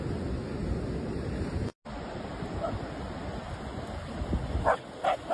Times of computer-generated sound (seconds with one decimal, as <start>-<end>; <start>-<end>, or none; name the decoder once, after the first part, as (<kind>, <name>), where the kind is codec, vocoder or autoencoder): none